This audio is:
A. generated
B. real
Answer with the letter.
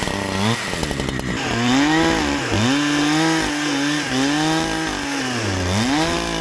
B